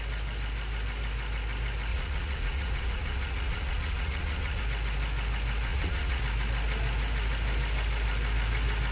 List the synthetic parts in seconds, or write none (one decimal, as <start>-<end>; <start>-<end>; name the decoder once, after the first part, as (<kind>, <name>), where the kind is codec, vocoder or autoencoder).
1.9-4.6 (vocoder, Vocos); 5.7-6.2